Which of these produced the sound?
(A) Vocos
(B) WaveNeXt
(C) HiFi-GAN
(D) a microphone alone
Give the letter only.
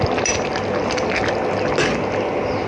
D